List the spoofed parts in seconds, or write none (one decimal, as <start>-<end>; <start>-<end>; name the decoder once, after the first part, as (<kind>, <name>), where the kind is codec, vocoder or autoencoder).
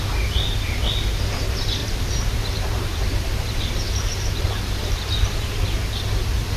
1.8-5.5 (vocoder, BigVGAN v2)